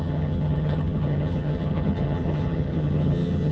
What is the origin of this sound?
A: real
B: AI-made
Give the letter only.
B